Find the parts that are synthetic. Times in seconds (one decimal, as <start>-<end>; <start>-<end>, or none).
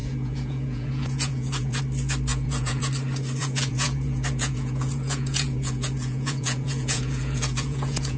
0.0-1.8; 2.3-2.8; 3.4-8.2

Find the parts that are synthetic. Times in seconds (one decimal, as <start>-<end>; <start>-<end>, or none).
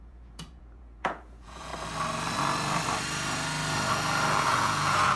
0.0-1.7; 4.4-5.2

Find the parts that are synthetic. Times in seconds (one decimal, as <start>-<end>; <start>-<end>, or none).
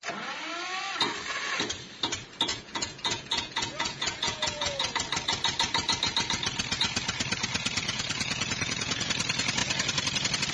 2.5-4.9; 7.8-9.1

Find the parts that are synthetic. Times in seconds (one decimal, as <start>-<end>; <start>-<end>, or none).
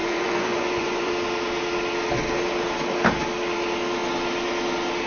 0.0-1.1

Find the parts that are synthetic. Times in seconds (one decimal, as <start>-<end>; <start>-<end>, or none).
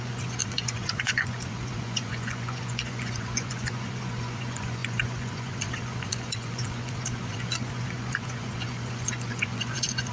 0.0-10.1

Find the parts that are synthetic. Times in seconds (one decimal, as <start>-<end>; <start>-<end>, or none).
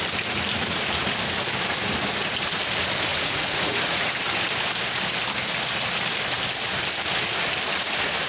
3.1-4.1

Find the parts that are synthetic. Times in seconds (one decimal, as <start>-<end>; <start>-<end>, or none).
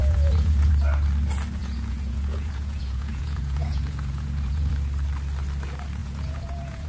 0.0-0.7; 1.6-4.7; 6.0-6.9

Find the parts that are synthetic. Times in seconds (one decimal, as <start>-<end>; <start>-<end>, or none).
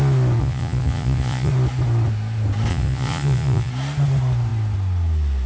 0.4-1.5; 2.7-3.7